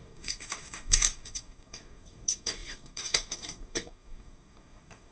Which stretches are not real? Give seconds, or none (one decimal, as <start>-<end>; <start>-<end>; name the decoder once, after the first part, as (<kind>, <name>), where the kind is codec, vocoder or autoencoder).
0.0-5.1 (codec, DAC)